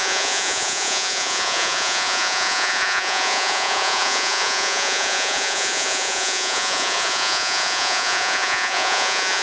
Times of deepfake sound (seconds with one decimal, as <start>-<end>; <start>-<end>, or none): 0.0-9.4